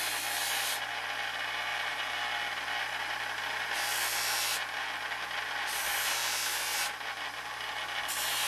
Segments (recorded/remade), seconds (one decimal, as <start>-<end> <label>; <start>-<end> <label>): 0.0-1.7 recorded; 1.7-2.2 remade; 2.2-8.5 recorded